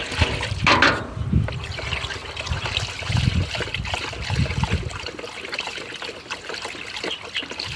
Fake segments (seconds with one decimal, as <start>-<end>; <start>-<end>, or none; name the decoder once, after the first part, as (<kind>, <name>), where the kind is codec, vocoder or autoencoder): none